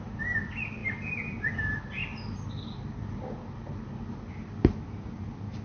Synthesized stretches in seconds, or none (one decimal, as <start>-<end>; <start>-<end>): none